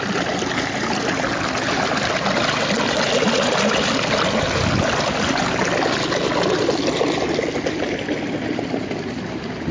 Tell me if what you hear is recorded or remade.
recorded